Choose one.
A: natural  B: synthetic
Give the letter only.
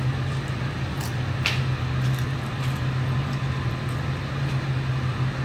A